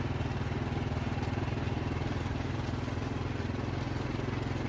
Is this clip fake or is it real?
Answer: real